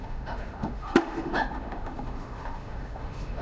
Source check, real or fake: fake